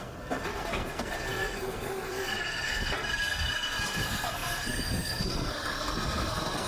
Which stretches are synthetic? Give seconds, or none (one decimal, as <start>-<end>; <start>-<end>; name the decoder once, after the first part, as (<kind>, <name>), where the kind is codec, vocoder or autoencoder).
0.0-6.7 (codec, SNAC)